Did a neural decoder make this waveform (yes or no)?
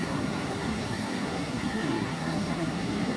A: yes